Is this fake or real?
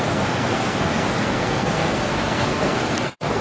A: fake